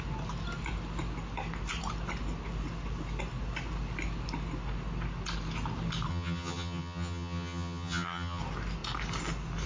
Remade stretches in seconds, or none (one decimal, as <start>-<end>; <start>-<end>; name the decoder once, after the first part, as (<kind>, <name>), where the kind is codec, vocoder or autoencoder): 6.1-8.4 (vocoder, HiFi-GAN)